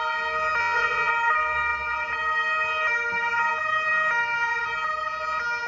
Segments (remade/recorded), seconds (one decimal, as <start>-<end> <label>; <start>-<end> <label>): 0.0-0.6 recorded; 0.6-1.1 remade; 1.1-5.7 recorded